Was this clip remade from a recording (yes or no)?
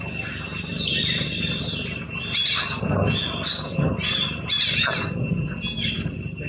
no